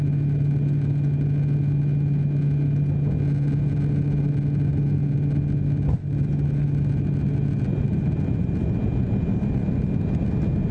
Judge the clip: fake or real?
real